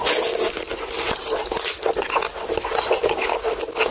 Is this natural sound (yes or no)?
yes